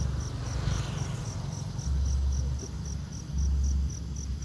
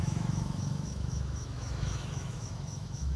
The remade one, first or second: second